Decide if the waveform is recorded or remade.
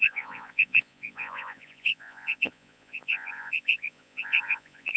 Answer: remade